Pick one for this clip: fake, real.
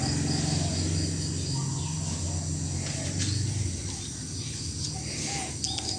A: real